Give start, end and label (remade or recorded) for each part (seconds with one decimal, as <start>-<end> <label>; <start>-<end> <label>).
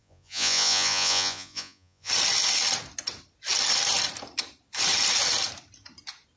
0.0-2.1 remade; 2.1-6.4 recorded